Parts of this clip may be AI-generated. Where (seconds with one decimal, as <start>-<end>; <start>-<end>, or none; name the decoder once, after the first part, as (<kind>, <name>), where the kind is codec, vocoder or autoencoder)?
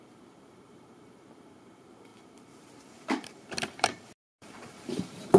0.0-5.4 (vocoder, BigVGAN v2)